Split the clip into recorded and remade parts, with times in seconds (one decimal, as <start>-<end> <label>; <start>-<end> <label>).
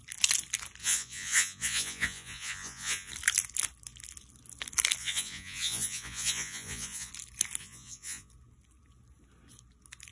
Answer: 0.0-0.8 recorded; 0.8-3.1 remade; 3.1-5.0 recorded; 5.0-7.1 remade; 7.1-7.6 recorded; 7.6-8.3 remade; 8.3-10.1 recorded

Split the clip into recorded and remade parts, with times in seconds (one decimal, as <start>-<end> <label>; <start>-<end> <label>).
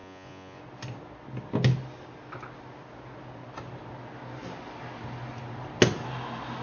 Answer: 0.0-0.6 remade; 0.6-6.6 recorded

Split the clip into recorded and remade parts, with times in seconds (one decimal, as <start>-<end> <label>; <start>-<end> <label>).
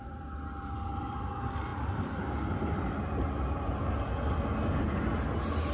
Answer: 0.0-5.7 recorded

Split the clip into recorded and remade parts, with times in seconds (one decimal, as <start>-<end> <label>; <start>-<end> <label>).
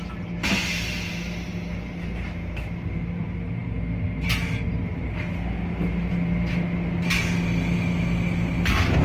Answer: 0.0-9.0 recorded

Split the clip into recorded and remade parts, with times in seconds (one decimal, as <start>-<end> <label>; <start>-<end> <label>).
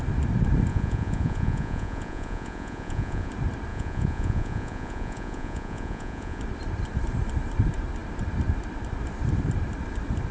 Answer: 0.0-0.7 recorded; 0.7-3.3 remade; 3.3-3.7 recorded; 3.7-6.4 remade; 6.4-10.3 recorded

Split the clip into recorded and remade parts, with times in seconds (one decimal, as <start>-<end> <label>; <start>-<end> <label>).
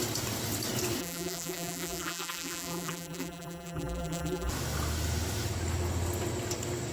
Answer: 0.0-1.0 recorded; 1.0-4.5 remade; 4.5-6.9 recorded